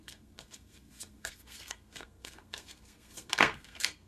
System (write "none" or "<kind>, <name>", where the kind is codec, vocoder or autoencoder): codec, SNAC